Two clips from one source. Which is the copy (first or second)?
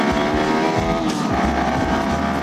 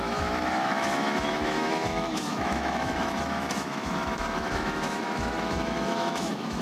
second